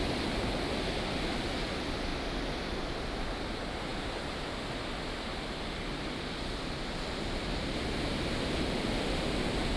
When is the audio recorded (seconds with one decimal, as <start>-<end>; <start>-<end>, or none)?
0.0-9.8